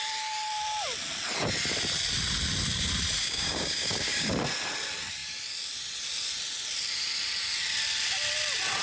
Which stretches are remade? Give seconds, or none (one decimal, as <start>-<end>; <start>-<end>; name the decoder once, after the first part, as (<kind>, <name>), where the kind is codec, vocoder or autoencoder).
3.2-4.3 (codec, DAC)

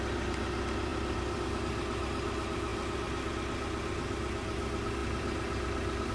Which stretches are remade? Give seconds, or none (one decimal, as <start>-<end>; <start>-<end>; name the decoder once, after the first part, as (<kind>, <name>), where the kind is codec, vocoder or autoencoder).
0.9-1.6 (vocoder, BigVGAN v2); 2.7-3.3; 5.0-6.1

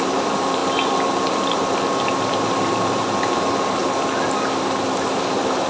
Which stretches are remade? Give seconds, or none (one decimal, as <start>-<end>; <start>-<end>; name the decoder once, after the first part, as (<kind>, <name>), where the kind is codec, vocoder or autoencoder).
0.0-0.6 (vocoder, BigVGAN v2); 1.3-3.8; 4.8-5.7